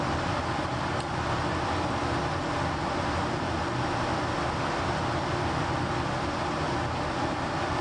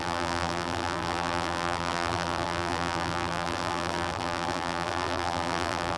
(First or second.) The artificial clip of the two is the second